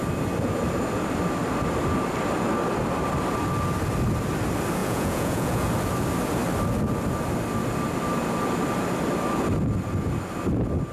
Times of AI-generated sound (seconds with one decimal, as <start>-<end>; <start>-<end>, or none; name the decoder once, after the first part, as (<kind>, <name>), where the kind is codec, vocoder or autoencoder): 4.8-5.7 (vocoder, Vocos)